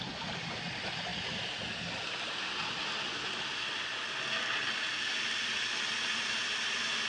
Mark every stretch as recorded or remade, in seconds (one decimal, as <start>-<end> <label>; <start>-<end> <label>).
0.0-7.1 recorded